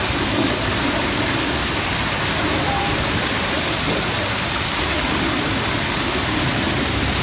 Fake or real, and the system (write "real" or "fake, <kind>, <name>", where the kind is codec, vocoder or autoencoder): real